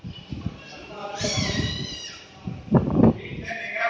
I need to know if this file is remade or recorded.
recorded